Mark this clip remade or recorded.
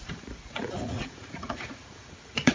remade